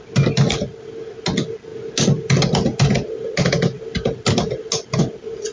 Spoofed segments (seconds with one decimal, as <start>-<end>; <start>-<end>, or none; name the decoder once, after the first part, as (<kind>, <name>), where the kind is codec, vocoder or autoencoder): none